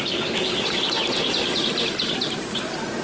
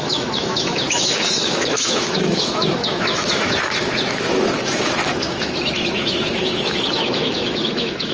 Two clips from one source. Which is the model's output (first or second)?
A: second